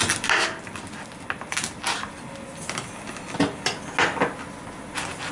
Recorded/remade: recorded